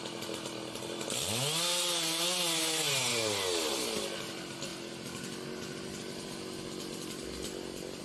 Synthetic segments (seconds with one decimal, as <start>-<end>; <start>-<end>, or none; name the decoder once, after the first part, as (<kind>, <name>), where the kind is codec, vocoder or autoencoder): none